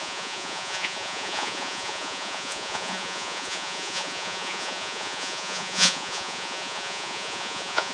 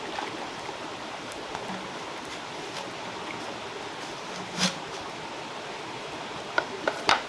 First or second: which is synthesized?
first